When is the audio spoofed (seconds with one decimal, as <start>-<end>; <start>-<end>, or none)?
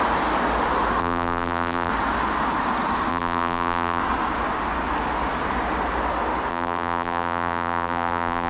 1.0-1.9; 3.1-4.0; 6.5-8.5